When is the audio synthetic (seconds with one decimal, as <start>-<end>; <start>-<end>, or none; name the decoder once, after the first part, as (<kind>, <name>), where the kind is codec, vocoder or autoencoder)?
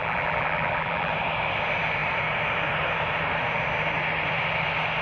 0.0-1.1 (vocoder, BigVGAN v2)